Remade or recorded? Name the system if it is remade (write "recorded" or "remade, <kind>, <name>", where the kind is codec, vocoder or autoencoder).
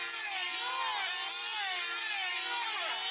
recorded